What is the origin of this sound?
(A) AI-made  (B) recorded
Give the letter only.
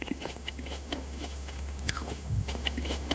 A